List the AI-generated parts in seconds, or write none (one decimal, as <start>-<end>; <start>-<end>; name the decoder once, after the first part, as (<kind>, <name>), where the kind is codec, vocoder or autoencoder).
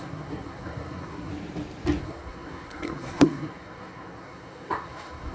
0.0-1.3 (codec, SNAC); 2.0-5.3